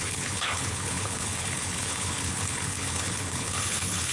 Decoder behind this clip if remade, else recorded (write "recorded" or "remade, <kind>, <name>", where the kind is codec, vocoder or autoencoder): remade, codec, HILCodec